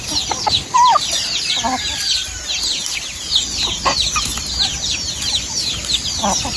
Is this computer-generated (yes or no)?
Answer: yes